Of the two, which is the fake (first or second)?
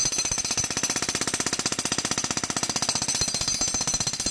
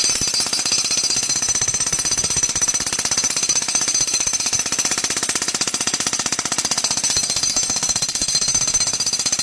second